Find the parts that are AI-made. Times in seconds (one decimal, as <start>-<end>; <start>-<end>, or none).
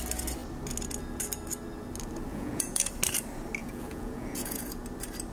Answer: 2.3-2.9; 3.6-4.7